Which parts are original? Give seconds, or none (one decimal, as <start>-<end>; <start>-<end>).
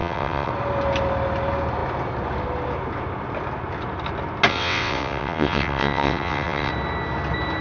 0.5-4.5; 6.7-7.6